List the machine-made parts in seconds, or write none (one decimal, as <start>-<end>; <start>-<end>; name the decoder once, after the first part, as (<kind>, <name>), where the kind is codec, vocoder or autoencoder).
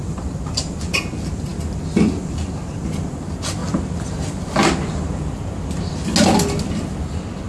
0.0-1.0 (vocoder, BigVGAN v2)